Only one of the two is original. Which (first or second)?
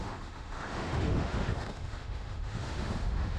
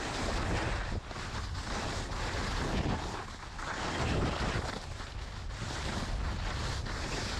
second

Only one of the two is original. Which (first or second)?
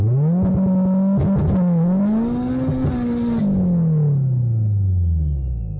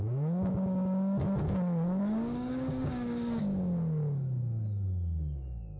first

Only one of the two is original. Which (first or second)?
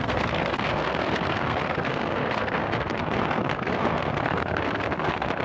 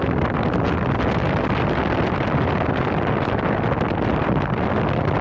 second